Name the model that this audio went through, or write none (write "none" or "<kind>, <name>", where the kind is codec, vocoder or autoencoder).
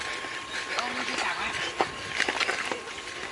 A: none